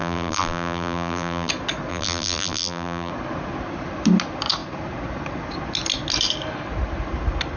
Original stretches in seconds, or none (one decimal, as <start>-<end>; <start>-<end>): 1.5-1.9; 3.1-7.6

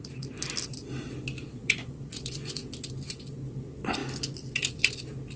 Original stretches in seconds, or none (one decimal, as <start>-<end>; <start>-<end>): 0.0-1.6; 2.7-5.4

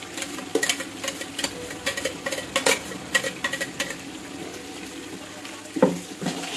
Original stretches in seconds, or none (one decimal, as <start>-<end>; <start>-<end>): 0.0-6.6

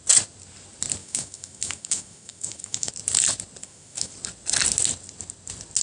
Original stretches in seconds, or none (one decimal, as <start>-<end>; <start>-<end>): 0.0-1.0; 2.9-3.6; 4.1-5.8

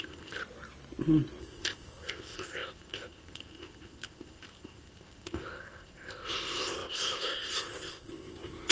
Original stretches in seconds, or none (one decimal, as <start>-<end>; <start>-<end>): 0.4-1.4